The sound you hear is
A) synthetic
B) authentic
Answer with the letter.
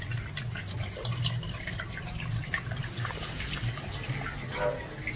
B